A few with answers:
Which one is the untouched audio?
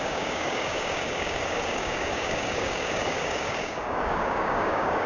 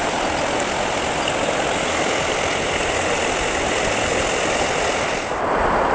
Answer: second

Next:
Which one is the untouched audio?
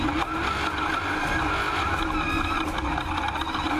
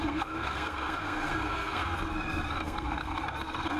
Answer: first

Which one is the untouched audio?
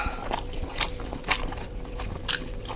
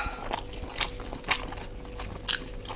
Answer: second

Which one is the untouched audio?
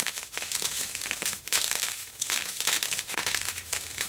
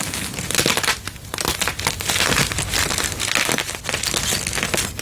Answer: second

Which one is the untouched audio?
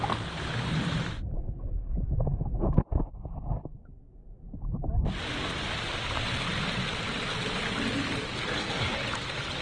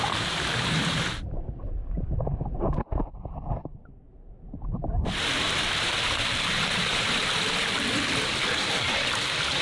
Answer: first